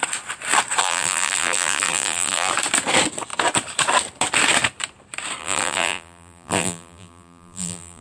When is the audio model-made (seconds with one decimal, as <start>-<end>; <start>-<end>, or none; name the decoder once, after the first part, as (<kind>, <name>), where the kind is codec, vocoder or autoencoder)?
0.8-2.5 (vocoder, BigVGAN v2); 5.4-8.0